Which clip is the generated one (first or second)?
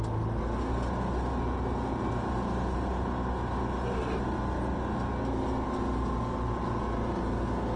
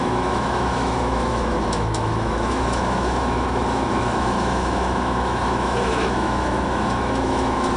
second